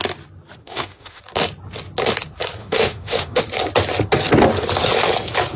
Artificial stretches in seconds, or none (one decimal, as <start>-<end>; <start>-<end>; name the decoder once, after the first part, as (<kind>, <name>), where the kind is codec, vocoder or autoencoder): 0.6-1.2 (autoencoder, DAC-VAE); 2.6-3.4